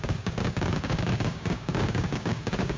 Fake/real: fake